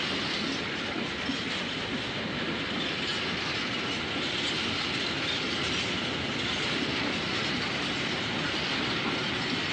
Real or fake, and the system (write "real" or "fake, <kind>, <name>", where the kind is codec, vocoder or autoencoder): real